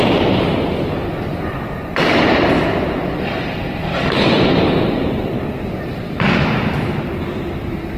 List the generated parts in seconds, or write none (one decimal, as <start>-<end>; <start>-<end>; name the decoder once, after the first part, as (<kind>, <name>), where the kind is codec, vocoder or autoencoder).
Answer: 1.0-5.8 (vocoder, BigVGAN v2)